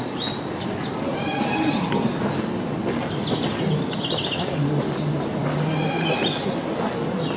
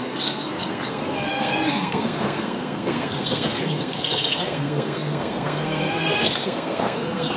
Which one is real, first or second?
first